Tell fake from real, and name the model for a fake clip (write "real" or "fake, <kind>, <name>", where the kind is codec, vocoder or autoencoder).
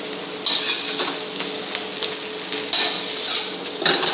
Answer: real